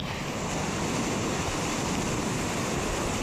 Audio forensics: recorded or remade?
recorded